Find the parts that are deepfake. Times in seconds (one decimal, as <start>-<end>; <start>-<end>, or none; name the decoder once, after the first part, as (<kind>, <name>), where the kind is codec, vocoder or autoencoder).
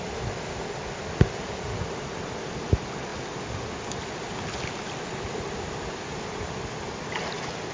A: none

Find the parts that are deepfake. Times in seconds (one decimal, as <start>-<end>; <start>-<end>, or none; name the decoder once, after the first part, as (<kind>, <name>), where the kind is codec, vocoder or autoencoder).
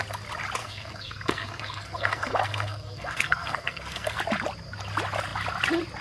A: 0.6-4.2 (codec, SNAC)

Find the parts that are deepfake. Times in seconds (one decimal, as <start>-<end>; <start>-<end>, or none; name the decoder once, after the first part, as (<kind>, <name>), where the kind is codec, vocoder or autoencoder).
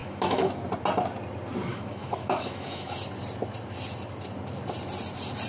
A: 0.0-0.5 (autoencoder, DAC-VAE); 1.7-2.9